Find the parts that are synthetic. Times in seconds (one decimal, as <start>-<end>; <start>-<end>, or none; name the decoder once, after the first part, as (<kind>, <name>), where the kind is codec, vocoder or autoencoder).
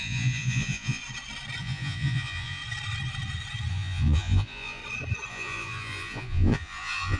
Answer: 0.0-1.0 (vocoder, Vocos); 1.6-2.6; 3.7-4.8; 5.3-7.2